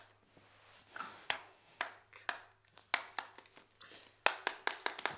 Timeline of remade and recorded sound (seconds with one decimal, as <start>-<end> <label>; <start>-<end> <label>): 0.0-0.9 recorded; 0.9-1.8 remade; 1.8-5.2 recorded